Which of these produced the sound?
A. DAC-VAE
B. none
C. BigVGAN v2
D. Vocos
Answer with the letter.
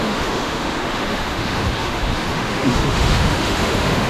A